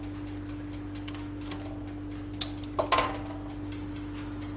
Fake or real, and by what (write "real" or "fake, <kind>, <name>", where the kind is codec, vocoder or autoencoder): real